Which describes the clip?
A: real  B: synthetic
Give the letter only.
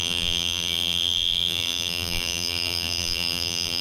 B